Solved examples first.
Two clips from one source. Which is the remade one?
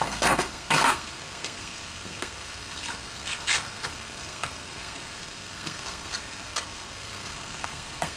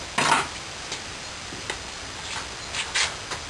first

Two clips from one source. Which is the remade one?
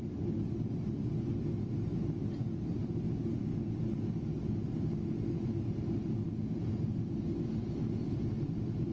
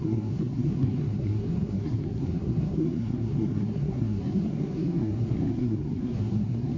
second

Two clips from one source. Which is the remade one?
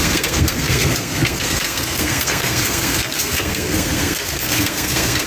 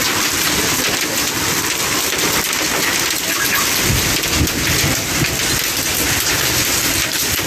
first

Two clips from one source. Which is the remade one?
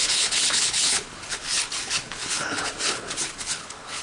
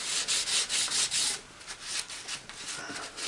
first